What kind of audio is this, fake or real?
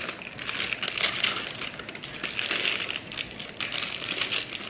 real